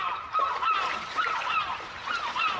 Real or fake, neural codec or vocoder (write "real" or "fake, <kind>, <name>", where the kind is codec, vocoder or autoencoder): real